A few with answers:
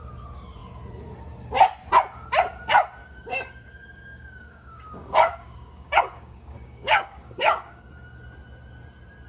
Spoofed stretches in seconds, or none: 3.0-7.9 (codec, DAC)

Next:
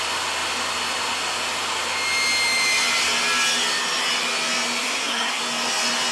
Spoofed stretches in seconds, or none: 4.8-5.4 (codec, SNAC)

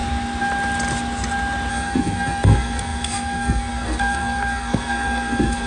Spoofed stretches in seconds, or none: 1.7-5.7 (codec, SNAC)

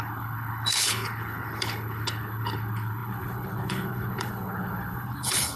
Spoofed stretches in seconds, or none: 0.0-5.6 (codec, HILCodec)

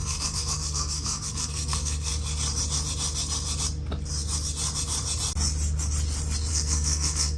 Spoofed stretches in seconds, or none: 0.0-2.1 (codec, SNAC); 6.5-7.4